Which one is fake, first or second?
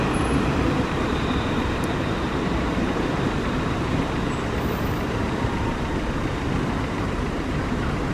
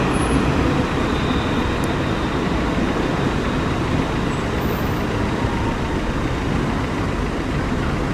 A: first